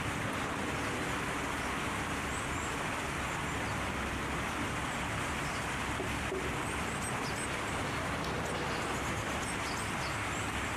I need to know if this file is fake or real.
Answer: real